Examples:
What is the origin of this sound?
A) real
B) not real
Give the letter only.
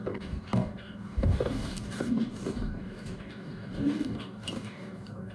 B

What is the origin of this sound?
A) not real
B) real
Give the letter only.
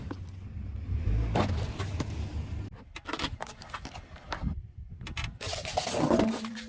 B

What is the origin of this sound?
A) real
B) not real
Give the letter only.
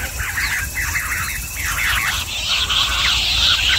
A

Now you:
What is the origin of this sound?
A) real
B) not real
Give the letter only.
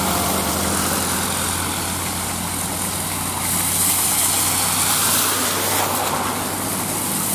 A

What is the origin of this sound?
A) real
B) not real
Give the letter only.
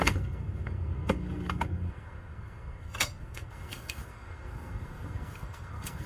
B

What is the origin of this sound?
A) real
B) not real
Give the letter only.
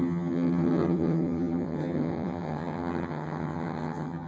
B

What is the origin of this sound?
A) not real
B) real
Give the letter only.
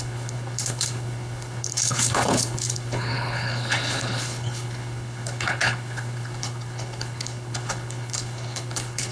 A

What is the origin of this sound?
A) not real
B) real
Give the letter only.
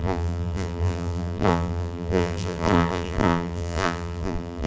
A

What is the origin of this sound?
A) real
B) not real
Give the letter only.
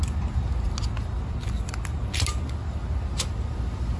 A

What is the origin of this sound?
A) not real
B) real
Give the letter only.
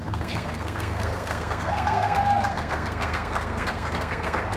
A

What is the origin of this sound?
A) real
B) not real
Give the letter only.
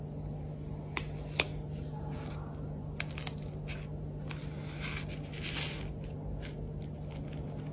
A